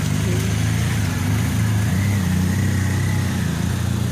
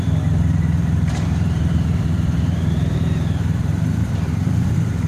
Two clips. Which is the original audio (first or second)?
first